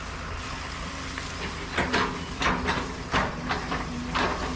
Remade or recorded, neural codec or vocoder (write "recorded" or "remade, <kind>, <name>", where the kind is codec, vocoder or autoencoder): recorded